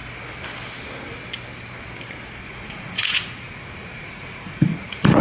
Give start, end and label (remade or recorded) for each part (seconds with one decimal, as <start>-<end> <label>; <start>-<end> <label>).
0.0-2.4 recorded; 2.4-5.2 remade